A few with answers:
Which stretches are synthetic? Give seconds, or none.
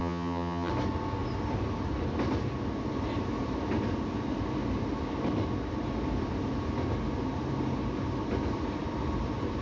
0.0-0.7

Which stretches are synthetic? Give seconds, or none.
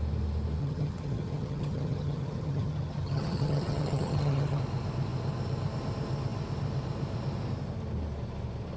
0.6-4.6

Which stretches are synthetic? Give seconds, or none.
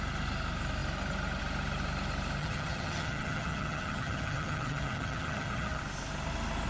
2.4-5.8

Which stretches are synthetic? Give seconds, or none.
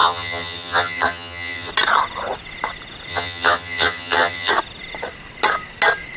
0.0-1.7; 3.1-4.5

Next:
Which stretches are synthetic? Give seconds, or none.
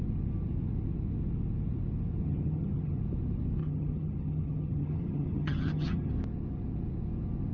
2.2-3.0; 3.6-6.1